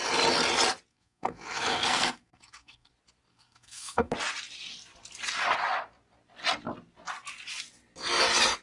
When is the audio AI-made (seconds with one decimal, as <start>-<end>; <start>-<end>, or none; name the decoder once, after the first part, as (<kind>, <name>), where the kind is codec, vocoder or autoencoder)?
0.9-2.9 (codec, SNAC); 3.3-4.1